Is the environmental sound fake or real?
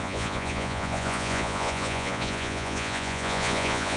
fake